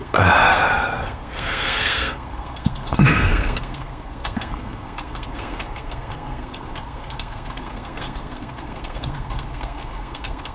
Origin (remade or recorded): remade